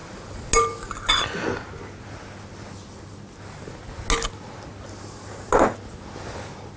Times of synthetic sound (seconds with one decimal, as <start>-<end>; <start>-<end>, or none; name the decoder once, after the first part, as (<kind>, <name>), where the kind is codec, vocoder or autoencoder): none